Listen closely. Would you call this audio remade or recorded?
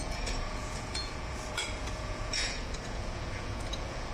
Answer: remade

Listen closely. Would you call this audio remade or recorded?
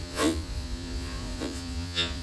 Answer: remade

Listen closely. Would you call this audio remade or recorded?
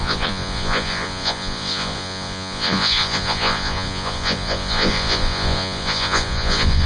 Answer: remade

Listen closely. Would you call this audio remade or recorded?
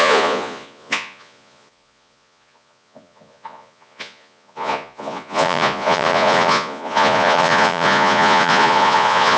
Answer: remade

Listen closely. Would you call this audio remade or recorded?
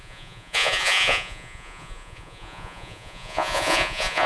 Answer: remade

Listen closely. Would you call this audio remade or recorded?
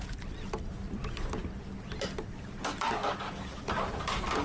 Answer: recorded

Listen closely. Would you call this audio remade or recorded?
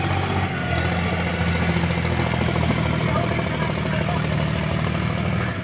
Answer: recorded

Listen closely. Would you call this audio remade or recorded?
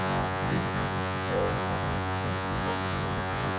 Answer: remade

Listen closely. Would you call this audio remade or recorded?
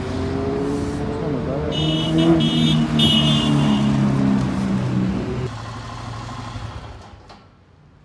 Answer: recorded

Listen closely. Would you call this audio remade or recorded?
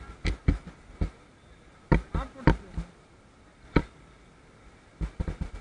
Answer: recorded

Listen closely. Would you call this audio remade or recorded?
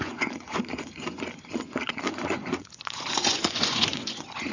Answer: remade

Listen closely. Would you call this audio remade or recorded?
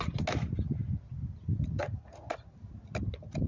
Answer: recorded